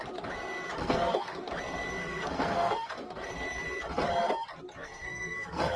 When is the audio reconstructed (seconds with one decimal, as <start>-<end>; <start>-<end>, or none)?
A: 0.8-1.5; 2.0-3.3; 4.8-5.8